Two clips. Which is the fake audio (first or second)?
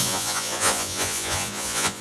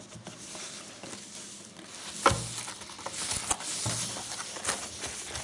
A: first